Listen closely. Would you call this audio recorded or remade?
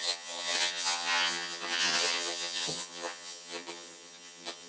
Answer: remade